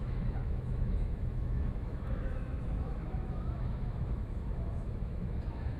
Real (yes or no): no